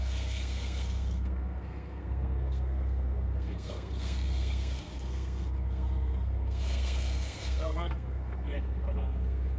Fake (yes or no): yes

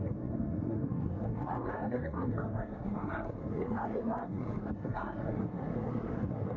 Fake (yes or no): yes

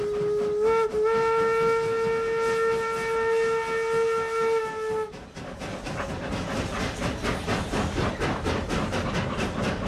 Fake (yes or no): no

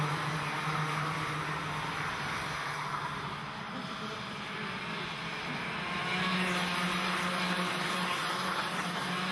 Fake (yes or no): no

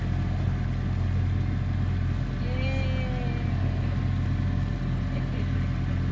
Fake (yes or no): no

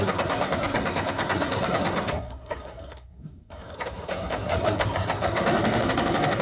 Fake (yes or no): yes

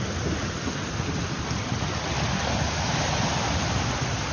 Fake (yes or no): no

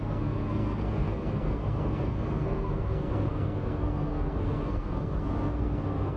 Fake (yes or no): yes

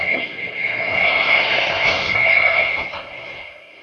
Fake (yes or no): yes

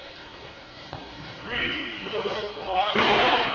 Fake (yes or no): yes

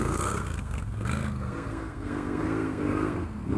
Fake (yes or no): yes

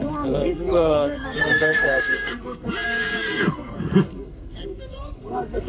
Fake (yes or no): yes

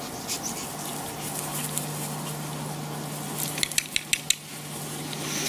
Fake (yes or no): no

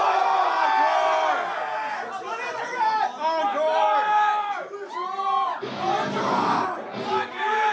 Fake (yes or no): no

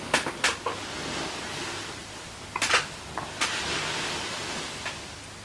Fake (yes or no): no